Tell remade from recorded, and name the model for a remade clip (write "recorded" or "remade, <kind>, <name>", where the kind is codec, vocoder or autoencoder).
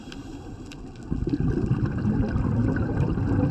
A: recorded